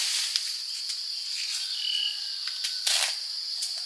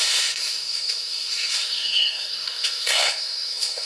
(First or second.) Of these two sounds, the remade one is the second